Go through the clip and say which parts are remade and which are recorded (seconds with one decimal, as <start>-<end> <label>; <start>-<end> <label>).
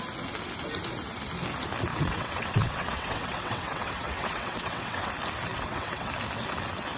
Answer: 0.0-1.9 recorded; 1.9-5.1 remade; 5.1-5.5 recorded; 5.5-6.1 remade; 6.1-7.0 recorded